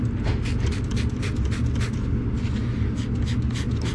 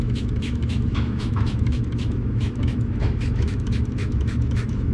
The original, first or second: first